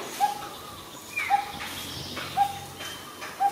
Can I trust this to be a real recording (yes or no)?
yes